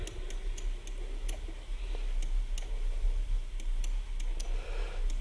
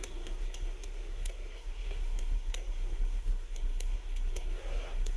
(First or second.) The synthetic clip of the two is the second